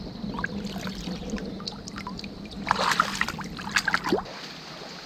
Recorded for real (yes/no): yes